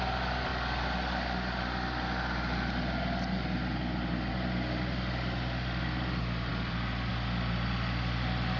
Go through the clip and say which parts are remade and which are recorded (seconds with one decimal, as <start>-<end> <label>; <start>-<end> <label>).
0.0-0.5 remade; 0.5-4.3 recorded; 4.3-8.6 remade